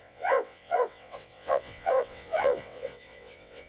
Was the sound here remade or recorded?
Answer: remade